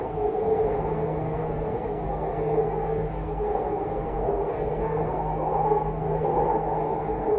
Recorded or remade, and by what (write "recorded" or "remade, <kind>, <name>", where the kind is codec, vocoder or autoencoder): remade, codec, SNAC